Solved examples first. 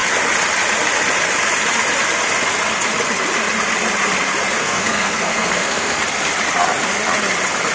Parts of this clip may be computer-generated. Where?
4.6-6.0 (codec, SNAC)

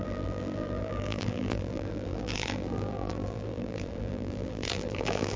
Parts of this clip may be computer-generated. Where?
0.0-5.4 (vocoder, BigVGAN v2)

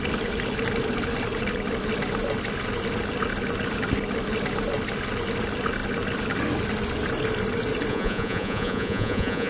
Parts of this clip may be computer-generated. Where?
7.9-9.5 (vocoder, Vocos)

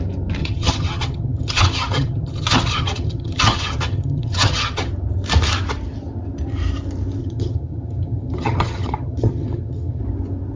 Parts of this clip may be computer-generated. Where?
0.4-4.9 (vocoder, HiFi-GAN); 7.2-10.0

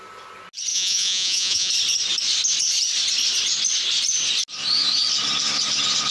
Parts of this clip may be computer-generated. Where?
0.7-1.7 (vocoder, Vocos)